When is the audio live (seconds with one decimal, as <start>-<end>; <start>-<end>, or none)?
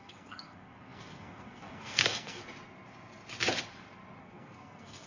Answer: 2.4-4.2